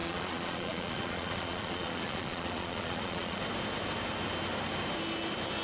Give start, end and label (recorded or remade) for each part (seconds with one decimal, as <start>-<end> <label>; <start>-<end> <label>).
0.0-3.4 remade; 3.4-5.6 recorded